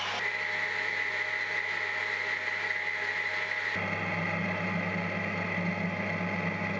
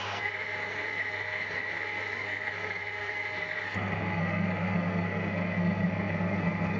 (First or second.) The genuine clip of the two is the first